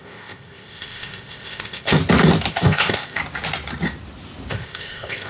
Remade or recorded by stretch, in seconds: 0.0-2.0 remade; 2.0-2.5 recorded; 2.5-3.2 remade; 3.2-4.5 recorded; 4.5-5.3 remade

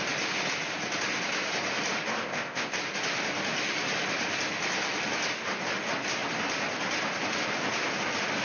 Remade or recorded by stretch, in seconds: 0.0-2.2 recorded; 2.2-2.7 remade; 2.7-8.4 recorded

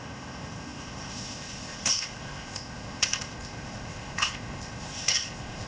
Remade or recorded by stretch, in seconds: 0.0-5.7 remade

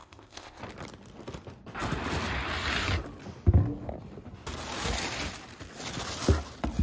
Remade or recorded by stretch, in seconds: 0.0-0.6 remade; 0.6-6.8 recorded

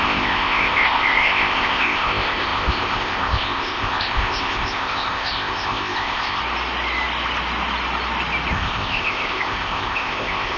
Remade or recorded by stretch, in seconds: 0.0-6.4 remade; 6.4-8.5 recorded; 8.5-10.6 remade

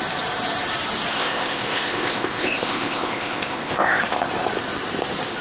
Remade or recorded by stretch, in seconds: 0.0-1.1 recorded; 1.1-4.3 remade; 4.3-5.4 recorded